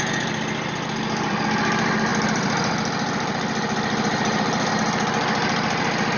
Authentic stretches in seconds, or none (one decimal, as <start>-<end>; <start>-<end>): 0.0-6.2